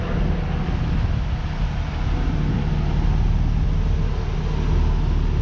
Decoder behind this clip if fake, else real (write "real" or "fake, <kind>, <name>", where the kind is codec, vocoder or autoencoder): real